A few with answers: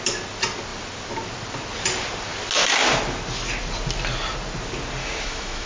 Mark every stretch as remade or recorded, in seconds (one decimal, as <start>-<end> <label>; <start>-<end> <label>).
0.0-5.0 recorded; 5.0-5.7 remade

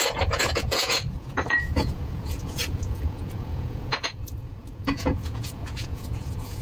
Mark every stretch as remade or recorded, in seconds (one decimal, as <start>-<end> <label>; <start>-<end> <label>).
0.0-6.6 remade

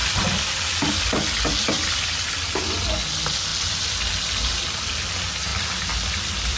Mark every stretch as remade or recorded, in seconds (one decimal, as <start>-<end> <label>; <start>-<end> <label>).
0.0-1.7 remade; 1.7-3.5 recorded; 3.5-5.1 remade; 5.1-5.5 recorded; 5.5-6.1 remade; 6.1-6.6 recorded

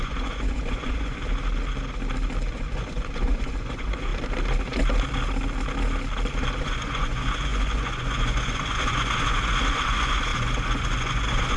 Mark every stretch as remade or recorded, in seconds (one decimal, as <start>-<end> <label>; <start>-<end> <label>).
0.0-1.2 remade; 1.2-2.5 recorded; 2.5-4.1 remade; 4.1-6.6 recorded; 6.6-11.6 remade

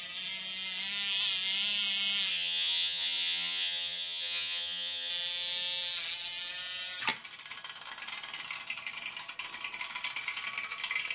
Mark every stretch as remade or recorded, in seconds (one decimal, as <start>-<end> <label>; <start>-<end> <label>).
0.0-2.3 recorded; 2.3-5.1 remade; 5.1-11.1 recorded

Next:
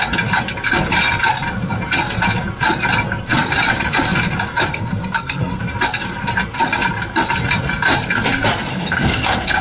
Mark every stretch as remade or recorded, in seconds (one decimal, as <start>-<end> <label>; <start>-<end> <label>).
0.0-4.7 recorded; 4.7-5.6 remade; 5.6-8.7 recorded; 8.7-9.6 remade